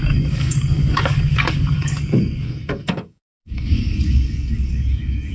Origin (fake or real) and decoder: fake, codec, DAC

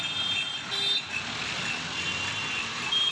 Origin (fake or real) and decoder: real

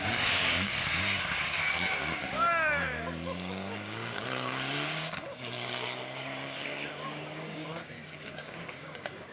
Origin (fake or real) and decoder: fake, codec, DAC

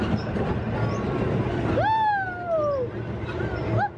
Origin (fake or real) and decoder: real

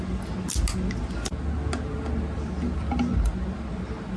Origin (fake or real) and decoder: real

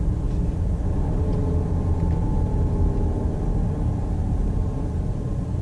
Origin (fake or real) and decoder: real